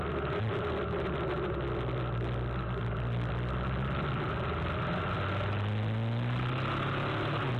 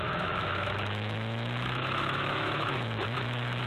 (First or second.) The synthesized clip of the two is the second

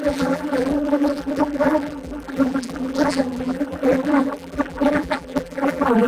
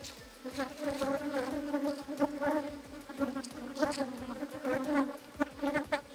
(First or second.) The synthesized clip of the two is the first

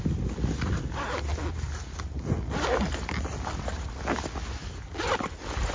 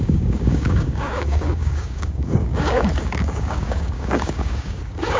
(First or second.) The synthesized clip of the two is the second